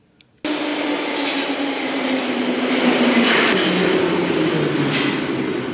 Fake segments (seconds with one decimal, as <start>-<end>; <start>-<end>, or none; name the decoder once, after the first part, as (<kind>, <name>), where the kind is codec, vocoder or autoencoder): 0.7-3.4 (vocoder, BigVGAN v2)